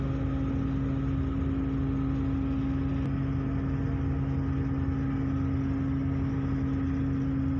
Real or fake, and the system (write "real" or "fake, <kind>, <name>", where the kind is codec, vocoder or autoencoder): real